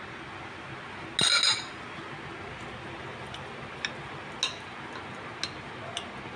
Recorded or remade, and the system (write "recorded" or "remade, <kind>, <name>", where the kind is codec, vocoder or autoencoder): recorded